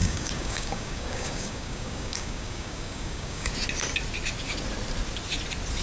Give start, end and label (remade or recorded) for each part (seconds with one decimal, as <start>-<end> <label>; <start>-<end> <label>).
0.0-3.5 remade; 3.5-5.8 recorded